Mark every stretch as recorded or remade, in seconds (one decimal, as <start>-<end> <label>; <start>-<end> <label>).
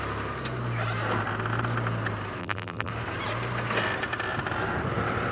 0.0-2.4 recorded; 2.4-2.9 remade; 2.9-5.3 recorded